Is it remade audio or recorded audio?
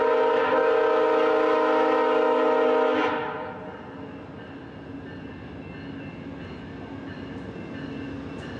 recorded